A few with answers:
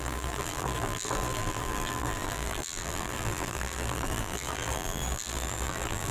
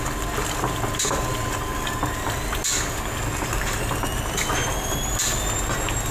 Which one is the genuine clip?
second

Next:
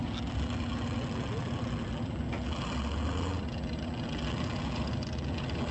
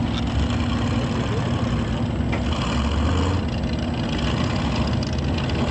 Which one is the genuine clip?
second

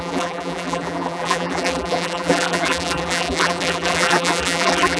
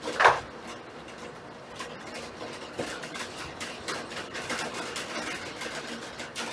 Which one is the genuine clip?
second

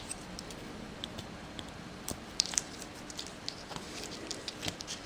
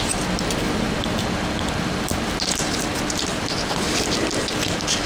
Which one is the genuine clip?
second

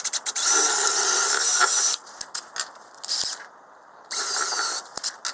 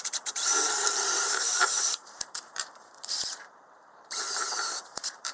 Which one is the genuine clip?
first